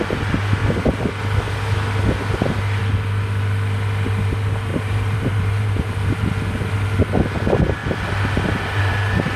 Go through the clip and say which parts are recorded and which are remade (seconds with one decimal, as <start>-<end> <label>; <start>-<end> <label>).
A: 0.0-4.7 recorded; 4.7-6.2 remade; 6.2-9.4 recorded